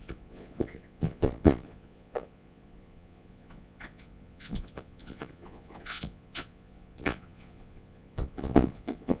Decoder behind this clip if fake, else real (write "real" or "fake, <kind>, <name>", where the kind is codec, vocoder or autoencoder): fake, vocoder, Vocos